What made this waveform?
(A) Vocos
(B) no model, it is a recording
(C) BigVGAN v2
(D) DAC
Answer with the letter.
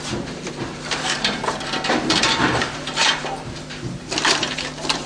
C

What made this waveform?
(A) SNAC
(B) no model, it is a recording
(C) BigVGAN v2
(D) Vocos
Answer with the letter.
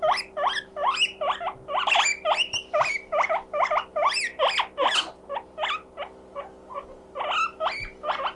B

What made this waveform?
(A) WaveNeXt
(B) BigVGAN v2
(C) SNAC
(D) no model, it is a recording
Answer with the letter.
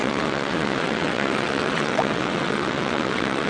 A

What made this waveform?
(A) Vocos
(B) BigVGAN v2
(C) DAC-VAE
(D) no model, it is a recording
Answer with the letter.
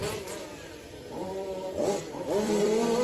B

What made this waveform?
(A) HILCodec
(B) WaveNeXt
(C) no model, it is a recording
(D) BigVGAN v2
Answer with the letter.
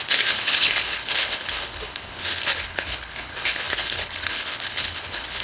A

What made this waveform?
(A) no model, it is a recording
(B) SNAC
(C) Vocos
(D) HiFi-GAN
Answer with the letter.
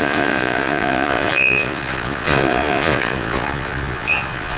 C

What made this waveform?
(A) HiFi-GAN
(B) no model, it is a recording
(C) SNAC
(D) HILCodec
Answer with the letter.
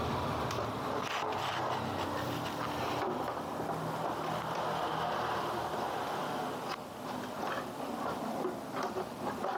B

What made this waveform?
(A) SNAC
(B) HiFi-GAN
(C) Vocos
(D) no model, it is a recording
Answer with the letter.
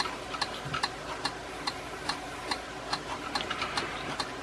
D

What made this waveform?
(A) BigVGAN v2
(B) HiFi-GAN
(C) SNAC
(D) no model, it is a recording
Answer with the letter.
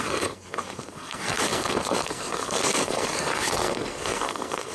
C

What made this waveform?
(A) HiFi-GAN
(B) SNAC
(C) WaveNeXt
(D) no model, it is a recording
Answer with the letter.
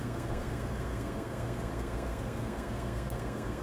B